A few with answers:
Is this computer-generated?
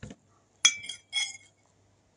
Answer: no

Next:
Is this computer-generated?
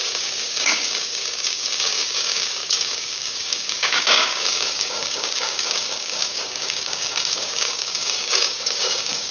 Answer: yes